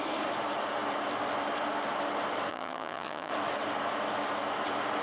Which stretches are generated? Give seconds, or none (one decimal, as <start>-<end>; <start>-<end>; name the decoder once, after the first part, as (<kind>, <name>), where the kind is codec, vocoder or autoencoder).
2.5-3.3 (vocoder, HiFi-GAN)